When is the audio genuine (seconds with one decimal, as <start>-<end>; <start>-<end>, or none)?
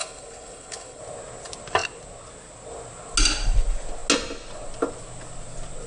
1.0-5.9